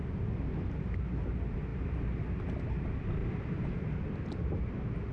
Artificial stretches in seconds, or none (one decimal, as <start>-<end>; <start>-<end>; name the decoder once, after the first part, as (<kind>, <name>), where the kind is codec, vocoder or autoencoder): 3.2-3.9 (vocoder, BigVGAN v2)